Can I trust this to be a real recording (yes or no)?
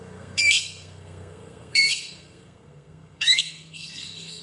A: no